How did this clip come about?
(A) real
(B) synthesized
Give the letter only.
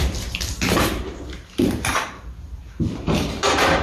B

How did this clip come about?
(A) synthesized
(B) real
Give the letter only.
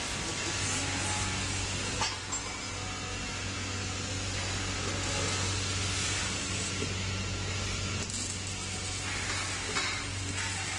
B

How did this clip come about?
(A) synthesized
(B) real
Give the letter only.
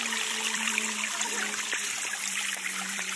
A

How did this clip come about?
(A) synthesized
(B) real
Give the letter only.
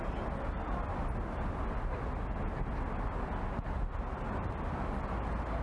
B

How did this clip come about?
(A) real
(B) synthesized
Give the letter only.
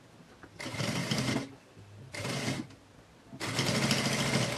A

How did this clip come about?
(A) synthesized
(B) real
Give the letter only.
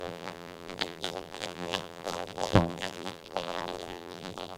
A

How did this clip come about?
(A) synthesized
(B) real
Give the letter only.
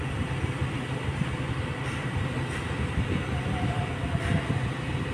A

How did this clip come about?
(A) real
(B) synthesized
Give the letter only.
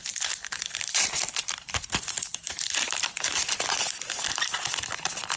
B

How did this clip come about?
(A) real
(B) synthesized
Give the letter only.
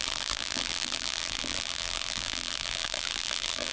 B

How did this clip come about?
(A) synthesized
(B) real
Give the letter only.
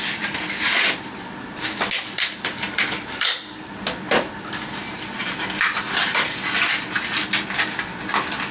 B